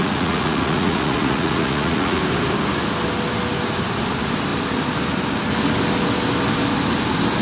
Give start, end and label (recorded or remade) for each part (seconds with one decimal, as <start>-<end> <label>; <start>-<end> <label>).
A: 0.0-2.2 remade; 2.2-7.4 recorded